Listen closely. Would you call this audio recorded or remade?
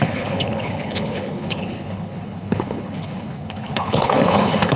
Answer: remade